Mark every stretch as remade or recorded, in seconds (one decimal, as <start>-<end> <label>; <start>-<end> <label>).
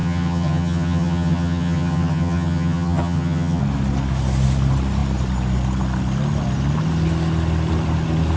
0.0-3.6 remade; 3.6-8.4 recorded